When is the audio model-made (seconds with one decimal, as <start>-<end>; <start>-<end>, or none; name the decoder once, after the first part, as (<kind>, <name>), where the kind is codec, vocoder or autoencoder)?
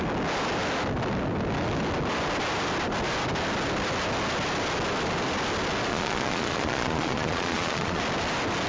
5.9-8.0 (vocoder, Vocos)